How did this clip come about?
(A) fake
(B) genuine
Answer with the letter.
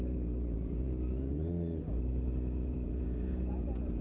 A